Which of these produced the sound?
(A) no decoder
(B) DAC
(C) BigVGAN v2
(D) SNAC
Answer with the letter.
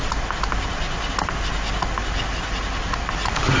A